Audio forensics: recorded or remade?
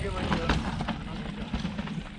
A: recorded